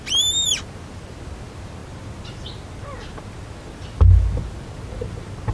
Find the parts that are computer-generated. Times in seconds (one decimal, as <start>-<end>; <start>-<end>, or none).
none